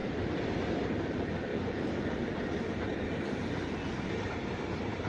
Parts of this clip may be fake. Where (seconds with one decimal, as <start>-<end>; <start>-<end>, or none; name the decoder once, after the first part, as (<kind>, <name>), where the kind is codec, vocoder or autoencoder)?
0.0-1.0 (vocoder, BigVGAN v2); 1.5-2.3